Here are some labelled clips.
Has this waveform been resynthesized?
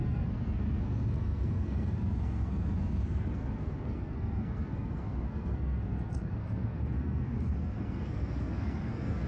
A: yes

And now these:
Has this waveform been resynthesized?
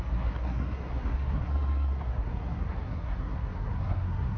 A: yes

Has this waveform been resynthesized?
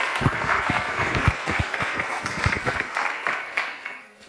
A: yes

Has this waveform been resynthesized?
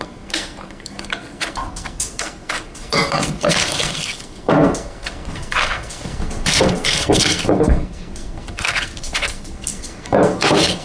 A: yes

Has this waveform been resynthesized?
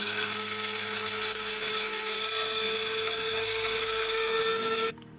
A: yes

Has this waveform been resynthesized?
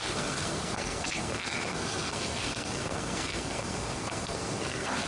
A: yes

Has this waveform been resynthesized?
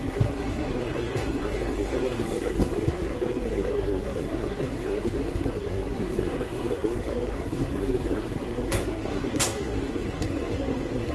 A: yes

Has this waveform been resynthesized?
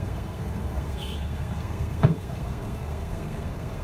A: yes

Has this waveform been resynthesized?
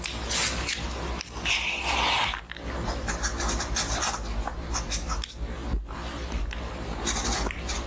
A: no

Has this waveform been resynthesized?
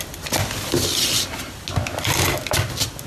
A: no